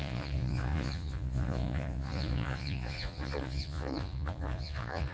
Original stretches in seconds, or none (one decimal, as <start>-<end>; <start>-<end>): none

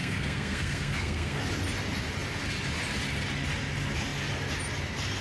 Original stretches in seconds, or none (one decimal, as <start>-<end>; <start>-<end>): 1.4-5.2

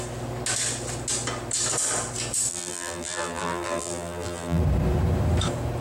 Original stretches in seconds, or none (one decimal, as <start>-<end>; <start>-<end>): 0.0-2.5; 4.6-5.8

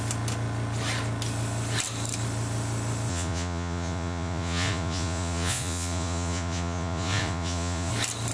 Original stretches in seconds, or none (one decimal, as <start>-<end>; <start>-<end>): 0.0-3.1; 7.9-8.3

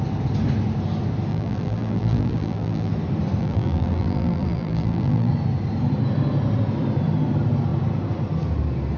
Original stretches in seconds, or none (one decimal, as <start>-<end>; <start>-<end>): 0.0-1.3; 2.9-3.4; 5.3-9.0

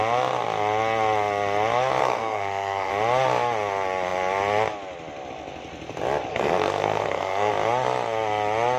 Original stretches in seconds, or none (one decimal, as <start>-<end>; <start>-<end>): 0.0-2.0; 2.9-6.3; 7.5-8.8

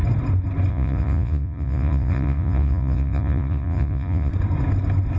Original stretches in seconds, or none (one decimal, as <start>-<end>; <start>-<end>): 0.0-0.7; 4.3-5.2